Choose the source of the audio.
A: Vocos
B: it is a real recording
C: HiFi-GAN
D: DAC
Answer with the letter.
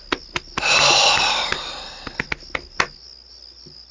B